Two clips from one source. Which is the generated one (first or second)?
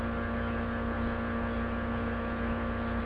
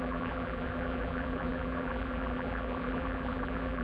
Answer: second